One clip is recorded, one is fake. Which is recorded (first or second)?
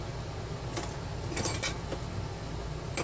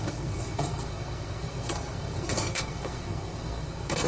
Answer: first